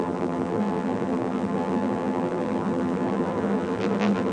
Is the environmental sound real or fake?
fake